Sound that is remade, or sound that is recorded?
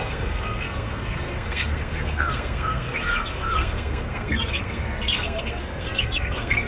remade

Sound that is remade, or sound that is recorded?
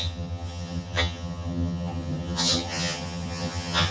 remade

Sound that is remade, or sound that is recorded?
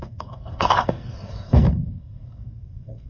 remade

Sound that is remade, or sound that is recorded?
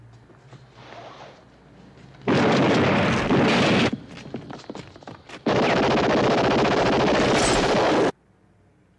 recorded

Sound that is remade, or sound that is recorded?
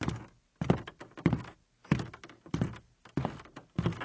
recorded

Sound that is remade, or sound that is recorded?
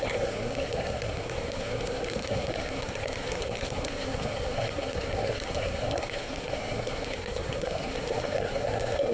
remade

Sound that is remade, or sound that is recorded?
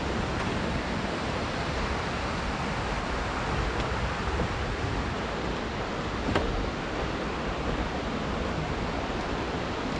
recorded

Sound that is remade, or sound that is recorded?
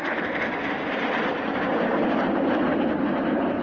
remade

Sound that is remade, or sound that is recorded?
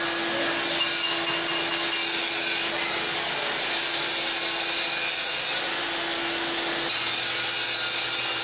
recorded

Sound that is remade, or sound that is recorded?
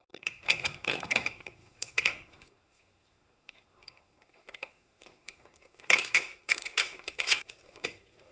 remade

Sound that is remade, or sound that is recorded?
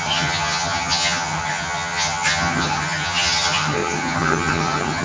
remade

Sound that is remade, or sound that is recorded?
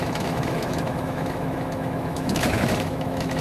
remade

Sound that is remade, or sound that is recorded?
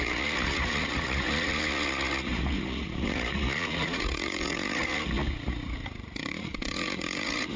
remade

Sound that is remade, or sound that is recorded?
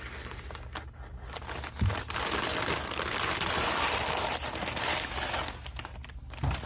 recorded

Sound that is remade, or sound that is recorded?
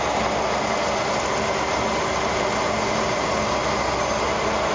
recorded